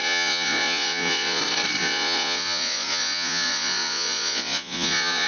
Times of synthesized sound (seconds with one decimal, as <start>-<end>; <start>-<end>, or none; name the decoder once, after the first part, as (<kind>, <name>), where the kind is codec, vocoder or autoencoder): 0.0-1.4 (vocoder, Vocos); 1.8-5.3